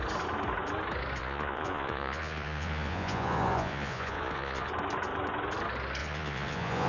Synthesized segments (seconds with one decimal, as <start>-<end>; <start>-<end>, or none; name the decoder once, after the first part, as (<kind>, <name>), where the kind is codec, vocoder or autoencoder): 1.2-4.7 (vocoder, Vocos); 6.0-6.9